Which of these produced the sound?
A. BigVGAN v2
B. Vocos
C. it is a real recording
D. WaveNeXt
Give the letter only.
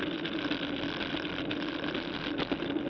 C